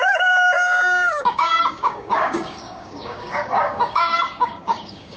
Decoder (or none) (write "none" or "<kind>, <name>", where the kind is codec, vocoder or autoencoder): codec, DAC